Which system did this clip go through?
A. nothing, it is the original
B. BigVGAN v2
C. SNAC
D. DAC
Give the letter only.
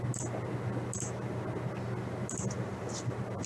A